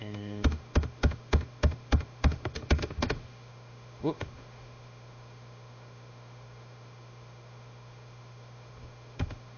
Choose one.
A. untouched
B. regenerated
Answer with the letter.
B